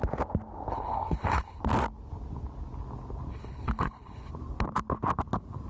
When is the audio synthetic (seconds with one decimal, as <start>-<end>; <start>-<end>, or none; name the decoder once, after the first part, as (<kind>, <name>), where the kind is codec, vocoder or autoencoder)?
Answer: 0.7-1.6 (codec, HILCodec); 3.3-4.3